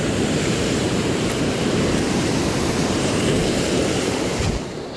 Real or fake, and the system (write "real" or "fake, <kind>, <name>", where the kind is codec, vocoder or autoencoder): fake, vocoder, BigVGAN v2